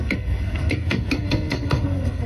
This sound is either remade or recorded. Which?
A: remade